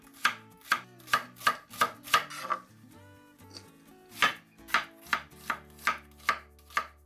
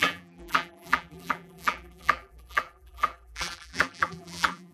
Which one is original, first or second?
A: first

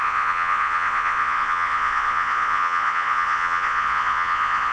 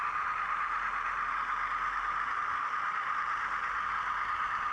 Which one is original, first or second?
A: second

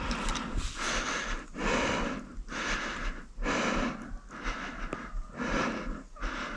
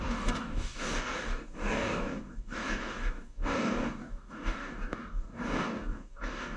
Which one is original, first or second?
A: first